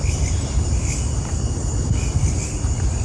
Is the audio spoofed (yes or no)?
no